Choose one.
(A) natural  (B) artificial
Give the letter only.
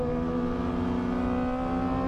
A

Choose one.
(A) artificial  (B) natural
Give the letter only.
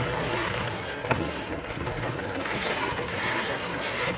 A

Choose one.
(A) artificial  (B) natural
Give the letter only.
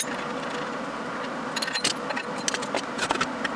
B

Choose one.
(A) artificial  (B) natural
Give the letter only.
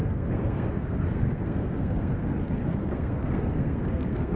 A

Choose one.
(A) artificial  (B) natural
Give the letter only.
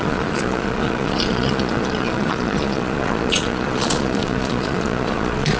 A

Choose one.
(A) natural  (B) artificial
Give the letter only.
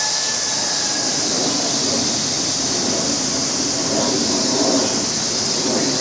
B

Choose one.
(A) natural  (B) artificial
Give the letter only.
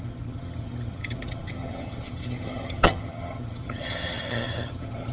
B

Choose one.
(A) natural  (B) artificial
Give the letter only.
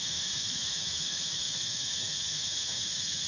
B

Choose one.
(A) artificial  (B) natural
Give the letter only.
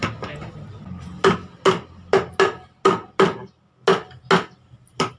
B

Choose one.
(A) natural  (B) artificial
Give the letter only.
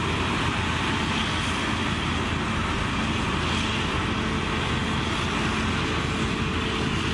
A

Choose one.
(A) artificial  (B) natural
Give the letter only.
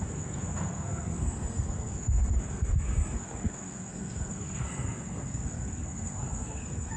A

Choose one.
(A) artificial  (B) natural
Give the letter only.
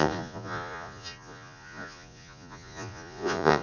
A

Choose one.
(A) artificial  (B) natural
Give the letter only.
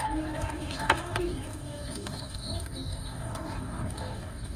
A